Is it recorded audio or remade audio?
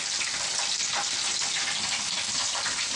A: recorded